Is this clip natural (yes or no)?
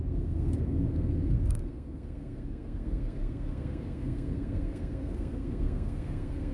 no